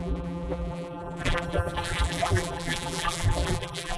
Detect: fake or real fake